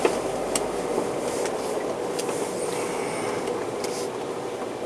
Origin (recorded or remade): recorded